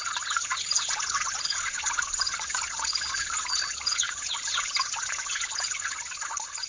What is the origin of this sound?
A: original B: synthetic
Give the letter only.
B